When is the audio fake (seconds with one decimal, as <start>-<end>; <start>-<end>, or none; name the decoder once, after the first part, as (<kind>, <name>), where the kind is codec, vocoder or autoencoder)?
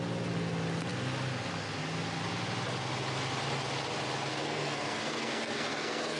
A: 4.3-6.2 (codec, SNAC)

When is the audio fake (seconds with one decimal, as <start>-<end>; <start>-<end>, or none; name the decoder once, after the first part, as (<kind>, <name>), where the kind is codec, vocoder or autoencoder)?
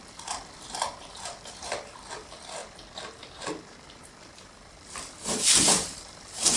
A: 0.0-2.6 (vocoder, BigVGAN v2); 4.1-6.6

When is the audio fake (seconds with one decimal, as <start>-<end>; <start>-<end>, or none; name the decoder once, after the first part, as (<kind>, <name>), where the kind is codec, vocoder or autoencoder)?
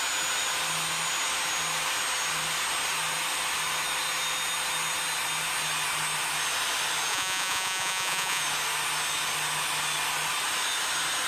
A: 7.1-8.4 (vocoder, Vocos)